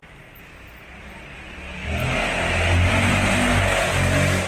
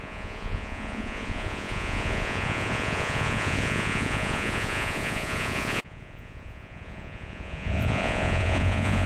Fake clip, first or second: second